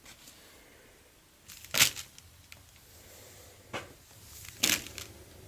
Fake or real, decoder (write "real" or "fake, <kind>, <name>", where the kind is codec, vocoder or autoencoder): real